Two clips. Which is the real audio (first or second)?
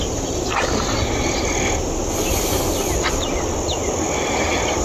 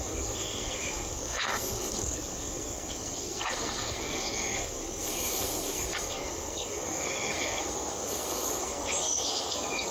first